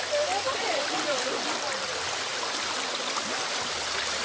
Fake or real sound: real